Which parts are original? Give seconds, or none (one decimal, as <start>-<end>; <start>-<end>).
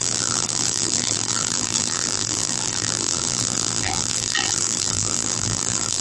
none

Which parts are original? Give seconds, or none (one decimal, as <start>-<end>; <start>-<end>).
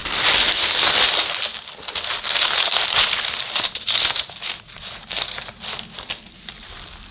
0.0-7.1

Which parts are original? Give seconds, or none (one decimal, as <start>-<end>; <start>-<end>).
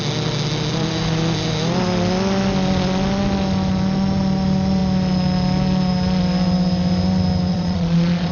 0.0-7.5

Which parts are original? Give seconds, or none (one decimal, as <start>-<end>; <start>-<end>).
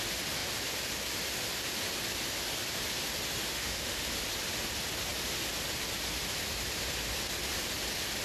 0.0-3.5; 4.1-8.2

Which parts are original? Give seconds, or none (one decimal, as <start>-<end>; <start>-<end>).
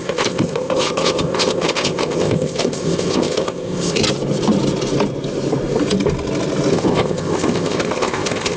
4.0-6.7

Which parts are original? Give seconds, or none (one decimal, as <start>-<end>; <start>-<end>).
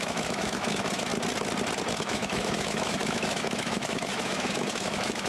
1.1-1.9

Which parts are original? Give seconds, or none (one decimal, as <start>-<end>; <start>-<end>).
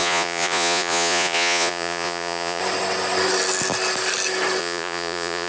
2.6-4.6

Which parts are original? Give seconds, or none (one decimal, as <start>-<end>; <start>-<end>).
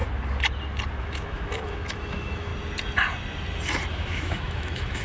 0.0-1.0; 2.5-3.9